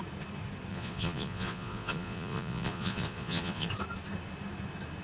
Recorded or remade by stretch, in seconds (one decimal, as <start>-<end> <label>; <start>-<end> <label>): 0.0-0.7 recorded; 0.7-3.7 remade; 3.7-5.0 recorded